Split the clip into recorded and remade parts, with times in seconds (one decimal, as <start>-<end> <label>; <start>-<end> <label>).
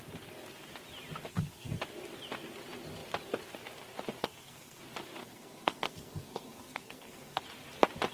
0.0-1.3 recorded; 1.3-1.8 remade; 1.8-4.2 recorded; 4.2-4.8 remade; 4.8-5.2 recorded; 5.2-7.4 remade; 7.4-8.1 recorded